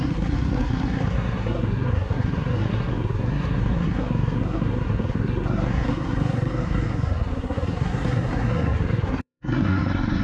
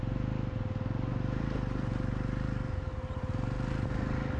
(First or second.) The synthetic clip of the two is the first